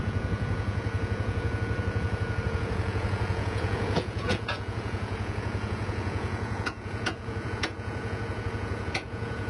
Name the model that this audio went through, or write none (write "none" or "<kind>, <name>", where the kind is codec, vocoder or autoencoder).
vocoder, Vocos